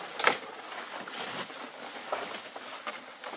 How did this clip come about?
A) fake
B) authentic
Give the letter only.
B